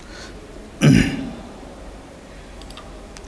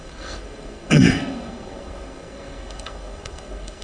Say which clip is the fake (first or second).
second